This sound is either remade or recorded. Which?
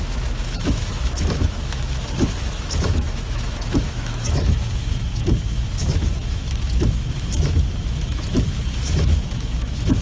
remade